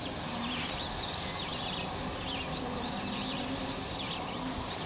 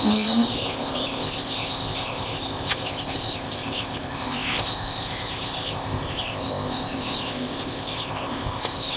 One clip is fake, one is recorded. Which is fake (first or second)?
second